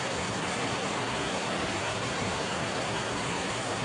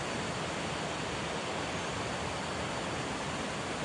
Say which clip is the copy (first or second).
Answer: first